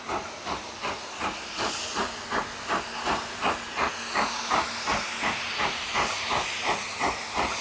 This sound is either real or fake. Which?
real